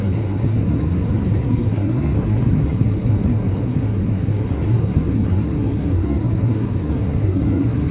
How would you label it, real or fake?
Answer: fake